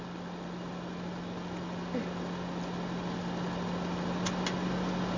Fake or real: real